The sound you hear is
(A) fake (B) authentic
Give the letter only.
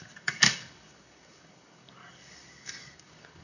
A